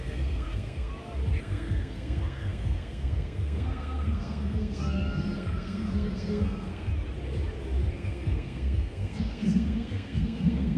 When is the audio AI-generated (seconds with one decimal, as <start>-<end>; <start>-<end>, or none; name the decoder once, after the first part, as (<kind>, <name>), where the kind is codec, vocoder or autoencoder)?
0.0-0.9 (codec, SNAC); 1.4-6.9; 7.9-10.8